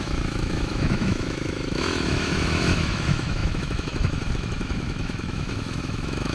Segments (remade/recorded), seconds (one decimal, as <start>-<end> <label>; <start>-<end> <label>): 0.0-6.3 remade